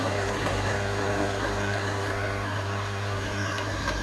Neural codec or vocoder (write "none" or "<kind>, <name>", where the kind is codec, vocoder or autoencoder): codec, SNAC